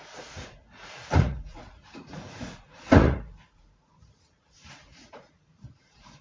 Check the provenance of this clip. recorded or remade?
remade